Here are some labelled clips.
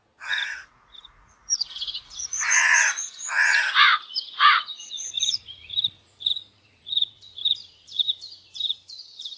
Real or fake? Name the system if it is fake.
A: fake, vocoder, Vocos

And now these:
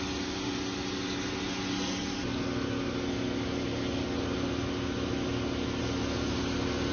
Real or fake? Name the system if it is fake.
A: real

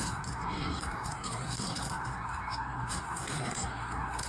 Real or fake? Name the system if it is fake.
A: fake, codec, SNAC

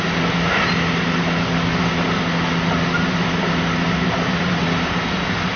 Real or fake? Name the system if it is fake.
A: real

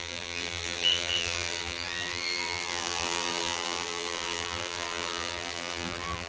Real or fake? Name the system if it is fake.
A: fake, vocoder, BigVGAN v2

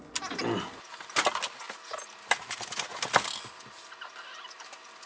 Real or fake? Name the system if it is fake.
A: real